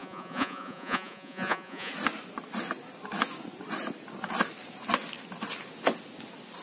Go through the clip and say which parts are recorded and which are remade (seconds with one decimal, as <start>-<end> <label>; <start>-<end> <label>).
0.0-1.9 remade; 1.9-6.6 recorded